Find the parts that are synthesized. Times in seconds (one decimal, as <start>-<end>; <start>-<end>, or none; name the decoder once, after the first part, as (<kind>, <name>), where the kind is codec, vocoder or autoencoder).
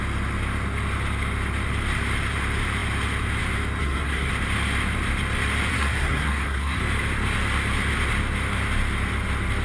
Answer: 3.8-4.3 (codec, SNAC); 5.7-6.8